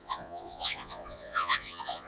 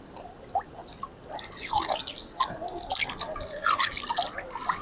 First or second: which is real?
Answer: second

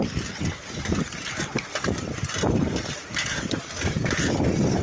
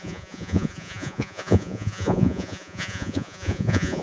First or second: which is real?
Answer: first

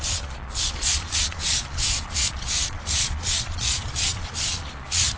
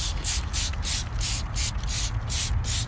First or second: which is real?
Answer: second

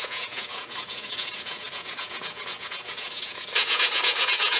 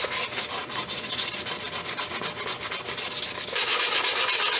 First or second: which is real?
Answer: second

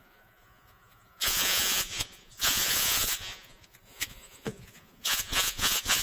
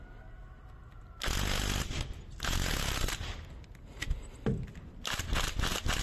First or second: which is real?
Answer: second